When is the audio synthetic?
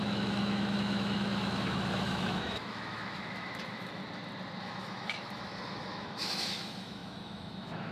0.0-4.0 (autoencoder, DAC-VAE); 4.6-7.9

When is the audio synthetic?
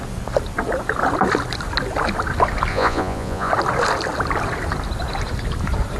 2.7-3.5 (vocoder, Vocos)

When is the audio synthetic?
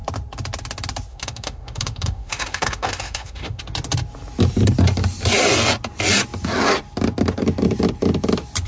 1.1-3.6 (autoencoder, DAC-VAE)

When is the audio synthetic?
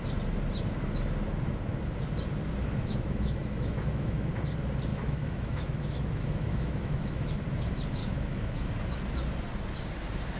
2.8-4.3 (autoencoder, DAC-VAE); 4.9-7.4; 8.0-8.7